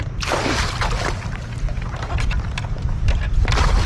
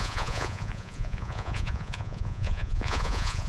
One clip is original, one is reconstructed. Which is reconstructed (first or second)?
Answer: second